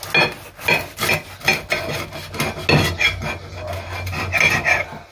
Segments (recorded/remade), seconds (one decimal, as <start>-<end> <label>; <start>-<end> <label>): 0.0-5.1 recorded